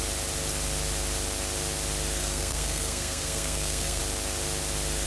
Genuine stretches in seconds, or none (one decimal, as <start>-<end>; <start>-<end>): 0.0-2.2; 4.0-5.1